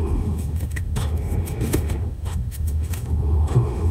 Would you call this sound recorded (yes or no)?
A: no